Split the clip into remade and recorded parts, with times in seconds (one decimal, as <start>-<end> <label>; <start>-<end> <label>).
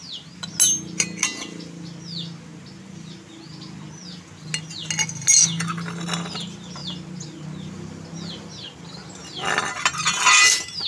0.0-10.9 recorded